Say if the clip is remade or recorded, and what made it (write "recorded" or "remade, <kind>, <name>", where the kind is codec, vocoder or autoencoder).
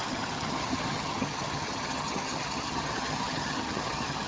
remade, vocoder, HiFi-GAN